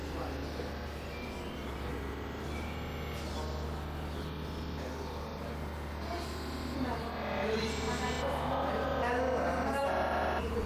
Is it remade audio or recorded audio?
recorded